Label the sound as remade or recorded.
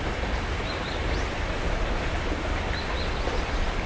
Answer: remade